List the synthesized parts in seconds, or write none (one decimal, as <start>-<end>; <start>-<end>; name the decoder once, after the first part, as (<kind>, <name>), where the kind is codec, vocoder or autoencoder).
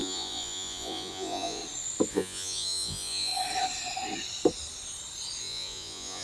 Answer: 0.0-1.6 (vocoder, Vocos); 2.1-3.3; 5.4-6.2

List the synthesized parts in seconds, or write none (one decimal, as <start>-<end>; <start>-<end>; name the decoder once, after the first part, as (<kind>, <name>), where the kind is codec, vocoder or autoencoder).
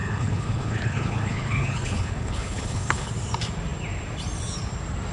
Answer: 0.0-3.1 (codec, HILCodec)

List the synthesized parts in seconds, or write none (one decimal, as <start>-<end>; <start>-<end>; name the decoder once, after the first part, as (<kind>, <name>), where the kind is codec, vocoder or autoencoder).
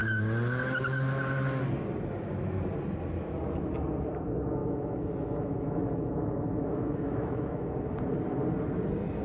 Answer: 4.6-7.7 (autoencoder, DAC-VAE)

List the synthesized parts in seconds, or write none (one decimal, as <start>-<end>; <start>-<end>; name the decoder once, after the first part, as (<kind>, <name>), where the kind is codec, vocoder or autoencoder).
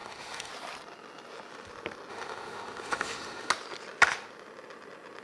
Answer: 0.0-0.5 (autoencoder, DAC-VAE); 2.1-3.5